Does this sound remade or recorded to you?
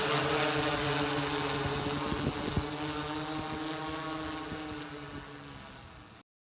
recorded